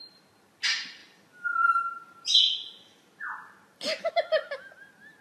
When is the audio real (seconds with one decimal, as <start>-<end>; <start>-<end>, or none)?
0.0-5.2